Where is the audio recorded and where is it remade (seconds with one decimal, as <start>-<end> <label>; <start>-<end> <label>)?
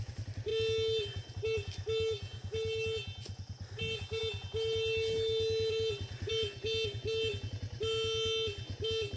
0.0-9.2 recorded